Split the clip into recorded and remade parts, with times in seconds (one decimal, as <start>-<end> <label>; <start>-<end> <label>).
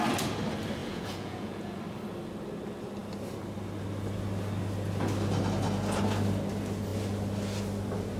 0.0-0.8 recorded; 0.8-1.8 remade; 1.8-8.2 recorded